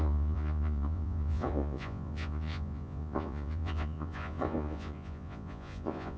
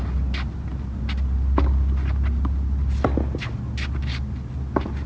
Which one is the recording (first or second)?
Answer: second